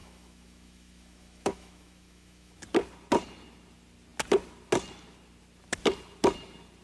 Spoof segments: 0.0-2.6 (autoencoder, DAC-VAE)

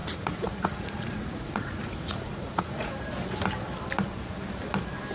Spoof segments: 0.0-2.9 (vocoder, Vocos)

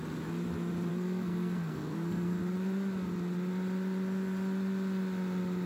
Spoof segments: 0.9-2.4 (codec, SNAC)

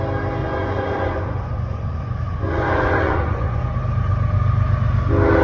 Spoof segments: 0.4-3.6 (vocoder, Vocos)

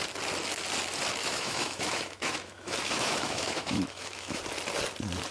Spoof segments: 1.2-4.4 (autoencoder, DAC-VAE)

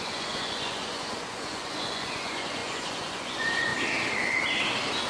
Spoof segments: 0.0-3.7 (vocoder, Vocos)

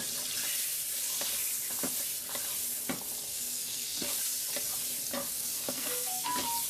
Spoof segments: 3.3-4.2 (codec, SNAC); 5.3-6.3